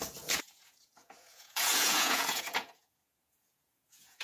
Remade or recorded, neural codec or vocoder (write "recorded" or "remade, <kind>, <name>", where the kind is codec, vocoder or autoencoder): remade, vocoder, Vocos